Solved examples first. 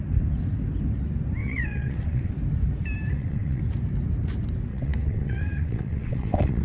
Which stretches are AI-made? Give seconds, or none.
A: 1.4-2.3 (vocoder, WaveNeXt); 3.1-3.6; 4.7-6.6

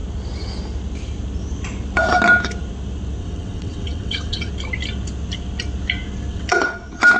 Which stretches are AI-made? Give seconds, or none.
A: 3.2-4.5 (vocoder, WaveNeXt); 6.3-6.8

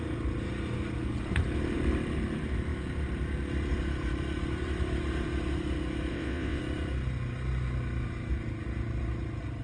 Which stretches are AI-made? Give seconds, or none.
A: 6.1-6.6 (vocoder, WaveNeXt)

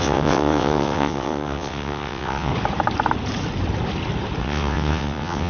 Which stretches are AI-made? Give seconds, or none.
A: 0.0-2.5 (vocoder, WaveNeXt); 4.4-5.5

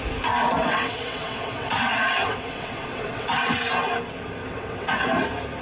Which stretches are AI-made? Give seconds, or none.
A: 0.4-3.6 (vocoder, WaveNeXt); 4.4-5.1

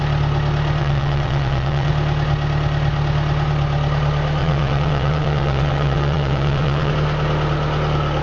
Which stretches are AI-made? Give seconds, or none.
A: 0.8-1.9 (vocoder, WaveNeXt); 4.4-6.9

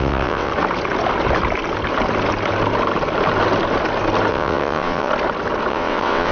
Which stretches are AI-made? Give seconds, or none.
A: 0.0-0.5 (vocoder, WaveNeXt); 4.3-5.1; 5.7-6.3